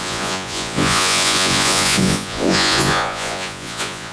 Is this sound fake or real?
fake